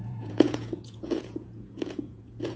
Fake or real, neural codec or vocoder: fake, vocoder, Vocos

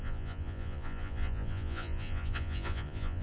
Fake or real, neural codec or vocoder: fake, vocoder, Vocos